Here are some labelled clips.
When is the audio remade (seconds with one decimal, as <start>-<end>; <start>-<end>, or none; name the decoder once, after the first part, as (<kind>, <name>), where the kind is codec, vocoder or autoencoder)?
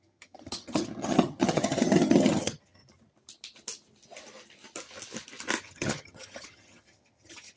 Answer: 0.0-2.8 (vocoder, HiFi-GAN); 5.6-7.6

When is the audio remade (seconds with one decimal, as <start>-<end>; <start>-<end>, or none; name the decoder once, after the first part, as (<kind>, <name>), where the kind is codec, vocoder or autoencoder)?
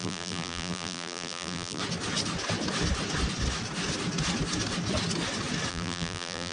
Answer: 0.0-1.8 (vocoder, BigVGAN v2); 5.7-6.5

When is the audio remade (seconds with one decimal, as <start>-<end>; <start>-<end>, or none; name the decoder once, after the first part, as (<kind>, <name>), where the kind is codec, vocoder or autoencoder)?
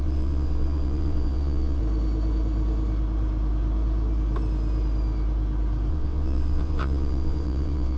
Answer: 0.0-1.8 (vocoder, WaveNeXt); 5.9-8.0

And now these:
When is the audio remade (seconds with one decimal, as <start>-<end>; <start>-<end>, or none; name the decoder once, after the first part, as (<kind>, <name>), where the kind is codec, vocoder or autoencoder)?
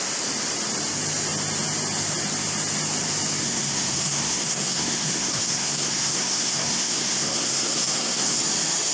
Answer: 3.4-8.4 (codec, SNAC)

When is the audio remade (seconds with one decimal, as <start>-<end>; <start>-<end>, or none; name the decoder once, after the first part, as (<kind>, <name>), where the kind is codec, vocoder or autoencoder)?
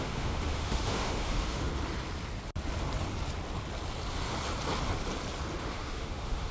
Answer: 0.0-1.7 (autoencoder, DAC-VAE); 5.6-6.5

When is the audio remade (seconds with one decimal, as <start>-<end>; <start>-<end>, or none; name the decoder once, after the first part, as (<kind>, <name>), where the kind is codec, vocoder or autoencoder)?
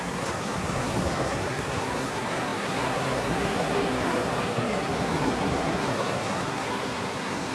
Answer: 0.0-7.5 (codec, SNAC)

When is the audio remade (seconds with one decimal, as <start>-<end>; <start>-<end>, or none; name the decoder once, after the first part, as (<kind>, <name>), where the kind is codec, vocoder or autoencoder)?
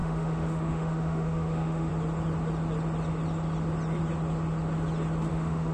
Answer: 0.0-1.9 (autoencoder, DAC-VAE); 5.3-5.7